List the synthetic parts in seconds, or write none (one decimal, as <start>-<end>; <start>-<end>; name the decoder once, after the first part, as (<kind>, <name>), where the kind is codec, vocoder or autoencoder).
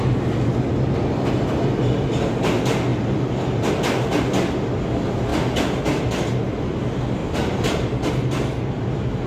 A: 2.9-3.7 (vocoder, BigVGAN v2); 5.3-5.8; 7.2-8.1